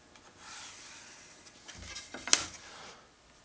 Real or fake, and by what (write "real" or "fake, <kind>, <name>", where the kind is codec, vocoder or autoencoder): real